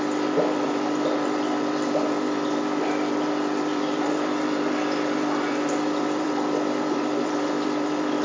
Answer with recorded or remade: remade